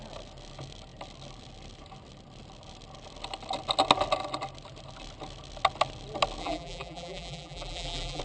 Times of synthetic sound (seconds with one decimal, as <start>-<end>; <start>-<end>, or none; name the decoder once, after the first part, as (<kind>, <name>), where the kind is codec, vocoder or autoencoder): 6.4-8.2 (vocoder, BigVGAN v2)